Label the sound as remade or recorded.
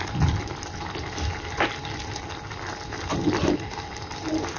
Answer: recorded